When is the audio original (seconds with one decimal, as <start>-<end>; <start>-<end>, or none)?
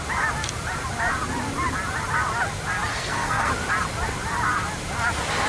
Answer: 0.0-2.9; 3.5-5.5